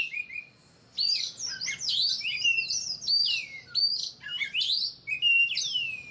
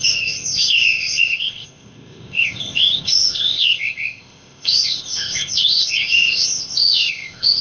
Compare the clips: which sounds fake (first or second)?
second